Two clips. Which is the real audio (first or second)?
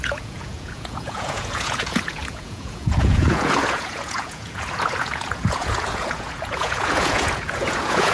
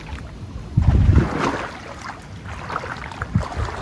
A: second